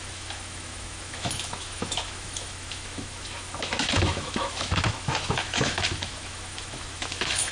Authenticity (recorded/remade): remade